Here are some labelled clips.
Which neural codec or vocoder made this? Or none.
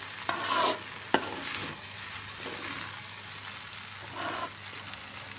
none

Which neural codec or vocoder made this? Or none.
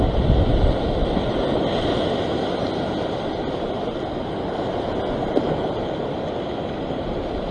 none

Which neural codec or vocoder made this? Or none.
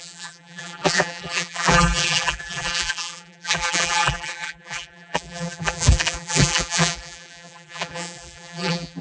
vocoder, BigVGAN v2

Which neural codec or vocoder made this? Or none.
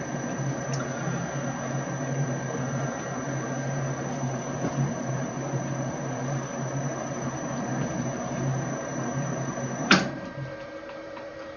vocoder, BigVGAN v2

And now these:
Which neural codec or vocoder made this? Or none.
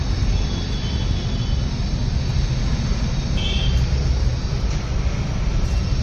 none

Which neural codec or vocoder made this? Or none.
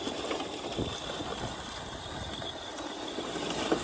none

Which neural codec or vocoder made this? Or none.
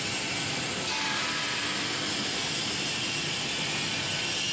none